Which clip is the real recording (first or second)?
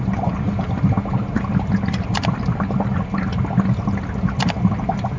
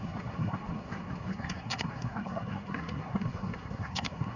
first